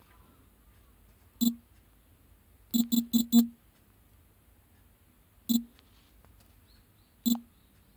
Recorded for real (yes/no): yes